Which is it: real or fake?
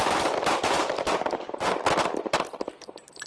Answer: real